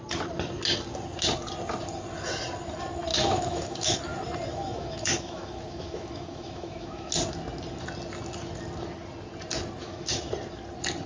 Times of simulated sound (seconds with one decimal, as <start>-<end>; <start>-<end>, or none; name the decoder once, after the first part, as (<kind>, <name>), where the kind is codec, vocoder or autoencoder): 3.1-4.0 (autoencoder, DAC-VAE); 4.5-7.1; 9.8-10.3